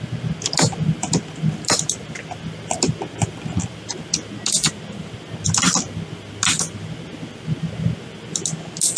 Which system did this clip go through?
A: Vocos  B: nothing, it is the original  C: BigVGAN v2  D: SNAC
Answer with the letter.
B